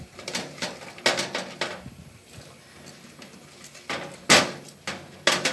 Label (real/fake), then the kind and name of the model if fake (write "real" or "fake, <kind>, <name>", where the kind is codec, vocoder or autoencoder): real